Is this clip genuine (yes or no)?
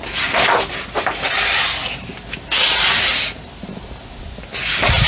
yes